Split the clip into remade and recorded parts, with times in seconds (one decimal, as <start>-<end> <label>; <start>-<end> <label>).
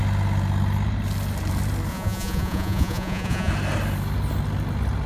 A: 0.0-1.9 recorded; 1.9-3.5 remade; 3.5-5.1 recorded